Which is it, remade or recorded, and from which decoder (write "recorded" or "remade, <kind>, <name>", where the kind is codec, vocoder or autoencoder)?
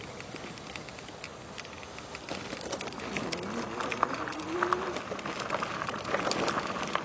recorded